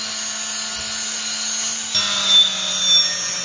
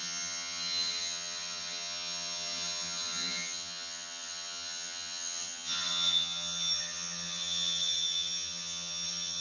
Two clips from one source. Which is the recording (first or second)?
first